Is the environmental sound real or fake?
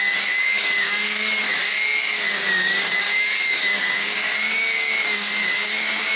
fake